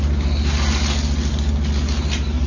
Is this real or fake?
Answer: real